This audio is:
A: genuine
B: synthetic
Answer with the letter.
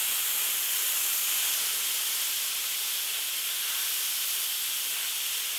A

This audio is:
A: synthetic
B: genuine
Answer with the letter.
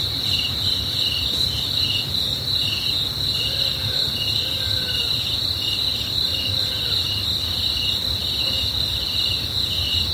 B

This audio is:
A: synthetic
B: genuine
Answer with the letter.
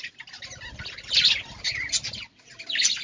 B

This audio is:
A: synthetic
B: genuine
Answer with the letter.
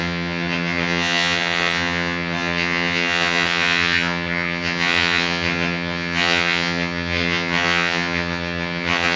A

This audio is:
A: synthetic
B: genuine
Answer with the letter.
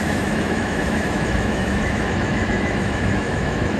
A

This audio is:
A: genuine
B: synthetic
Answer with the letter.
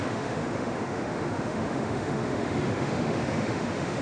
B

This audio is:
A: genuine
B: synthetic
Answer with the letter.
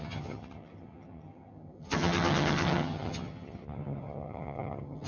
B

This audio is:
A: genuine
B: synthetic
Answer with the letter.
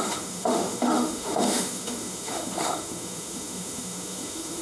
B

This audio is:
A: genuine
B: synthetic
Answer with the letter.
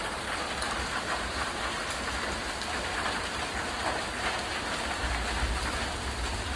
B